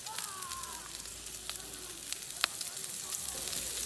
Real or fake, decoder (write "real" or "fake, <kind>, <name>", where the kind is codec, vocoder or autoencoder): real